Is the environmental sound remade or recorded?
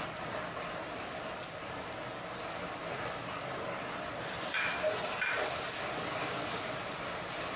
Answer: recorded